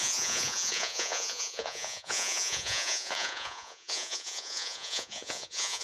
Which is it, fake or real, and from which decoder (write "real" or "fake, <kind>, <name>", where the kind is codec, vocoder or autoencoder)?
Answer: fake, vocoder, Vocos